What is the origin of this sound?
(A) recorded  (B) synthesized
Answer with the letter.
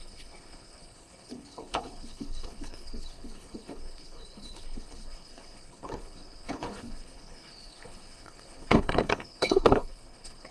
B